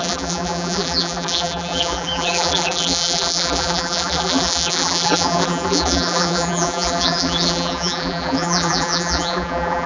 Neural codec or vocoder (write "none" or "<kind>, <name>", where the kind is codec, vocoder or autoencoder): vocoder, BigVGAN v2